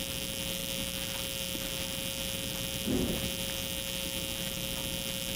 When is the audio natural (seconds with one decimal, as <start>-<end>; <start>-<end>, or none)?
0.0-5.4